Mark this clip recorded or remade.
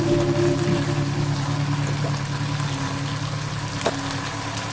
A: recorded